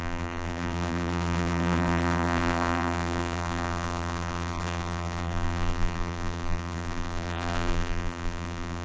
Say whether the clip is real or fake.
fake